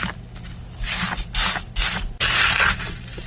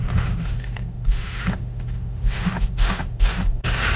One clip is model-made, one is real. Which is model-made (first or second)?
second